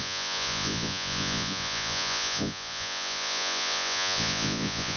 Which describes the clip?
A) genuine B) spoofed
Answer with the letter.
B